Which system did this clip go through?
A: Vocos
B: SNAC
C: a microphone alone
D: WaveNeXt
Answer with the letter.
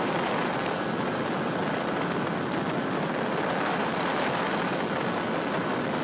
C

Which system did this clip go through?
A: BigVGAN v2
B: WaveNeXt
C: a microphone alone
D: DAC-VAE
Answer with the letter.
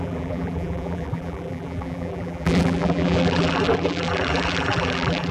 A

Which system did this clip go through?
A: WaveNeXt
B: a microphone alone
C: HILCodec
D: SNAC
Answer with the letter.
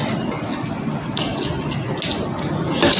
B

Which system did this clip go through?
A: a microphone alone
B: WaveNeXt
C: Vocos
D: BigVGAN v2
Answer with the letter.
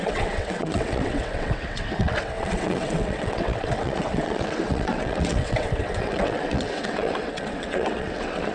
B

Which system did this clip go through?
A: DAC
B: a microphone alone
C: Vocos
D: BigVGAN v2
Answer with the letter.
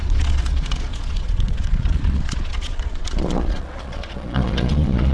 C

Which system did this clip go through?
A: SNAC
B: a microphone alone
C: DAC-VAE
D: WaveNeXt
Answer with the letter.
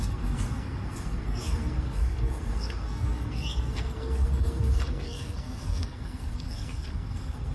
A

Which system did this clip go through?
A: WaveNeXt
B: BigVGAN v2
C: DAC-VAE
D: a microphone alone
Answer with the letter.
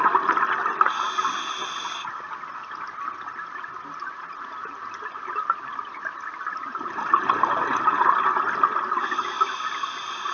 D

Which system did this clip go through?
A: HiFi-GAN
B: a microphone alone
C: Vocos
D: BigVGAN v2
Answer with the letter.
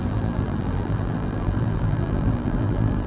D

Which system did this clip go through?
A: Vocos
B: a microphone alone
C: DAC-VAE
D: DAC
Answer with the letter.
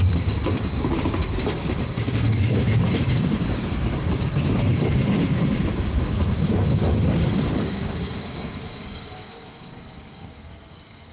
D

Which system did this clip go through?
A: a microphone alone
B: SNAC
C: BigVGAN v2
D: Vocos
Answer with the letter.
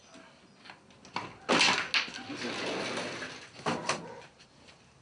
A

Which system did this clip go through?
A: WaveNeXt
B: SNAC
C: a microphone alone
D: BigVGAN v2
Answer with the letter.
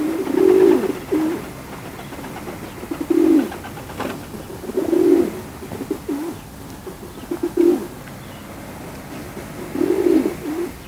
C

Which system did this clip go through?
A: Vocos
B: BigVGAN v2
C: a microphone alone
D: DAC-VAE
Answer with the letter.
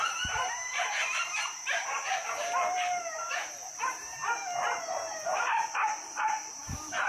B